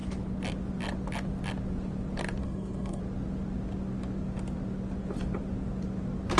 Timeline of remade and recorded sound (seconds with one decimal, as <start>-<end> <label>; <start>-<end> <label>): 0.0-2.4 recorded; 2.4-3.0 remade; 3.0-6.4 recorded

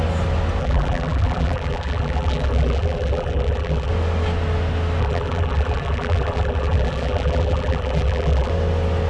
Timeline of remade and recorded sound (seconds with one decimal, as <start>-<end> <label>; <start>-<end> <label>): 0.0-0.6 recorded; 0.6-3.9 remade; 3.9-5.0 recorded; 5.0-8.5 remade; 8.5-9.1 recorded

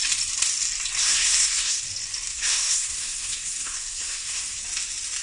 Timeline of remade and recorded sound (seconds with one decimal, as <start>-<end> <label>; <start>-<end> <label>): 0.0-1.0 recorded; 1.0-1.8 remade; 1.8-2.3 recorded; 2.3-4.6 remade; 4.6-5.2 recorded

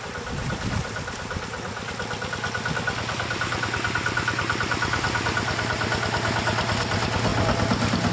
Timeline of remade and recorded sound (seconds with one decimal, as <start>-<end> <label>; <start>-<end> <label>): 0.0-8.1 recorded